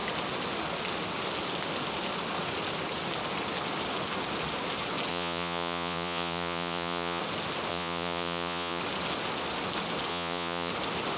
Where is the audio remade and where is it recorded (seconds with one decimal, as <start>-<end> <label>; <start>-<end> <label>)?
0.0-5.1 recorded; 5.1-7.2 remade; 7.2-7.7 recorded; 7.7-8.8 remade; 8.8-10.1 recorded; 10.1-10.7 remade; 10.7-11.2 recorded